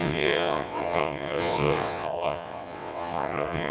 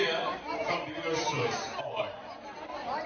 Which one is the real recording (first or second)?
second